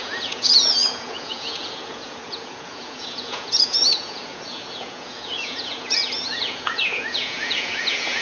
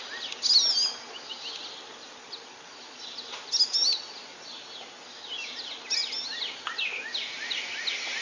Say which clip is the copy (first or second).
first